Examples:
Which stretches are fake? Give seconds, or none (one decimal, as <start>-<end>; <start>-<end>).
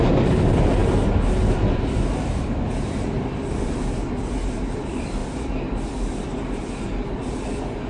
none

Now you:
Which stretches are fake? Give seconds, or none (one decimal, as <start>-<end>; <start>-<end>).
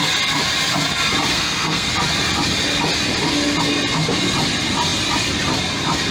1.3-1.9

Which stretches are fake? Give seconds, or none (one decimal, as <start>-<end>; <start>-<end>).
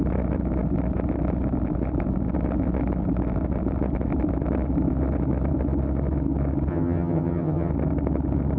6.7-7.7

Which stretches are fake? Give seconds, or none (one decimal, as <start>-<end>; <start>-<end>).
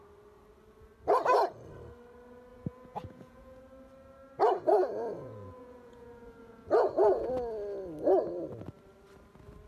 2.5-3.6; 4.8-7.3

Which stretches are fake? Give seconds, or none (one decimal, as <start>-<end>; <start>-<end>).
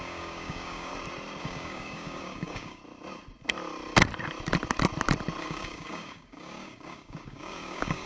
0.0-0.9; 1.4-2.8; 5.4-8.1